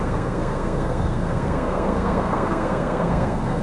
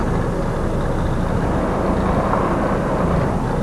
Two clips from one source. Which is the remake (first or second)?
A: first